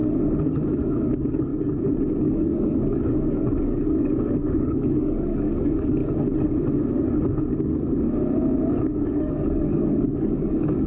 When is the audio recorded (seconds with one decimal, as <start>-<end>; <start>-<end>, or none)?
0.0-0.6; 1.5-2.2; 6.0-8.8